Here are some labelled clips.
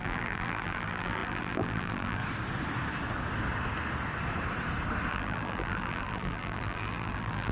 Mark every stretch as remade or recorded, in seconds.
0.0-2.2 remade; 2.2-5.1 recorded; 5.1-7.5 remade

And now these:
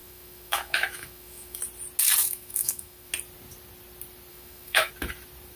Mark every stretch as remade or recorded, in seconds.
0.0-1.6 remade; 1.6-2.2 recorded; 2.2-3.1 remade; 3.1-4.3 recorded; 4.3-4.9 remade; 4.9-5.6 recorded

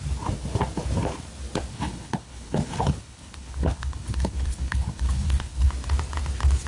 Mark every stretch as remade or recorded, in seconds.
0.0-1.7 recorded; 1.7-5.7 remade; 5.7-6.7 recorded

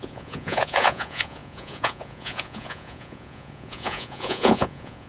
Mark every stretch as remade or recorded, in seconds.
0.0-5.1 remade

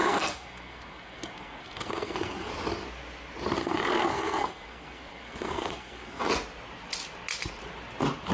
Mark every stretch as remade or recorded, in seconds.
0.0-2.5 remade; 2.5-3.6 recorded; 3.6-6.3 remade; 6.3-8.3 recorded